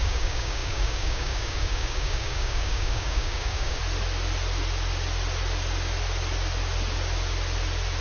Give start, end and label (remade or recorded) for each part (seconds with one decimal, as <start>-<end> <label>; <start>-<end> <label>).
0.0-3.8 remade; 3.8-8.0 recorded